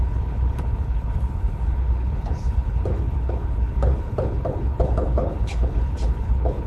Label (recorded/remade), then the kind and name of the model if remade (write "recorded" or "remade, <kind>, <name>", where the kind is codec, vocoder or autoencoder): remade, codec, HILCodec